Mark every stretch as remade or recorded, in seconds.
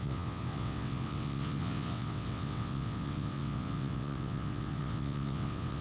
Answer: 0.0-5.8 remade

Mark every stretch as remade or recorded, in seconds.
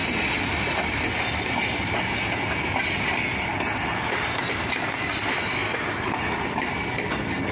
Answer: 0.0-7.5 recorded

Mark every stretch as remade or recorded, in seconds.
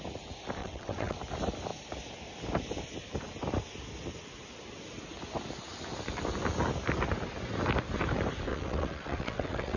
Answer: 0.0-0.6 recorded; 0.6-1.2 remade; 1.2-8.5 recorded; 8.5-9.8 remade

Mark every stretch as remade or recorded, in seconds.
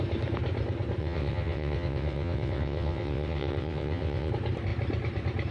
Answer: 0.0-1.0 recorded; 1.0-4.3 remade; 4.3-5.5 recorded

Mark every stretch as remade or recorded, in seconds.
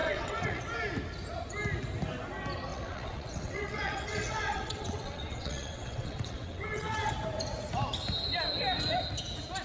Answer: 0.0-0.6 remade; 0.6-2.7 recorded; 2.7-7.1 remade; 7.1-9.6 recorded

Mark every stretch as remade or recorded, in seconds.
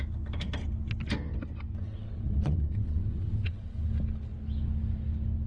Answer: 0.0-1.8 recorded; 1.8-3.9 remade; 3.9-5.5 recorded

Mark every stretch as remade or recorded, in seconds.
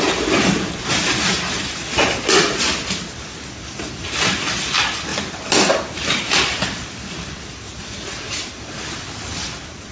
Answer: 0.0-9.9 recorded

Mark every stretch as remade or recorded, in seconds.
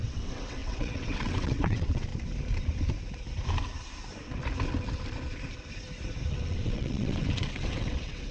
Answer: 0.0-2.1 remade; 2.1-6.3 recorded; 6.3-8.3 remade